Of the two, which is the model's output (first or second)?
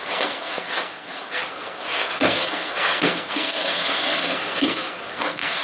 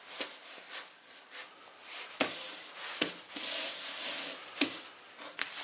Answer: first